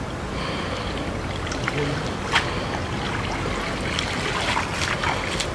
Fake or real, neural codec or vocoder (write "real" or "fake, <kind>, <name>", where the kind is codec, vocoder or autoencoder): real